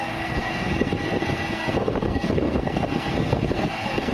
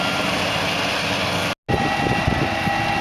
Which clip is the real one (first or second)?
second